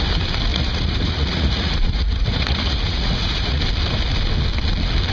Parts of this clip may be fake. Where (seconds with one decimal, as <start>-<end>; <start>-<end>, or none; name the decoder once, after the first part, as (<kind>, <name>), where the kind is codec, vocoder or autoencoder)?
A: 0.5-3.6 (vocoder, Vocos)